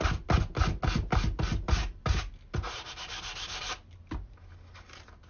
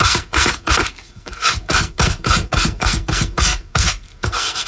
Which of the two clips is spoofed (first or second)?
second